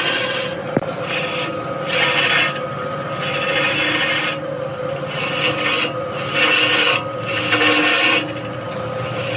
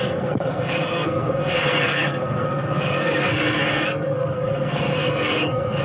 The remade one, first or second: second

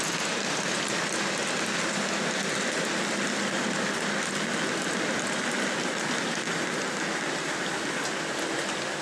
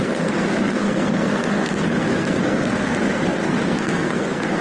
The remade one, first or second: second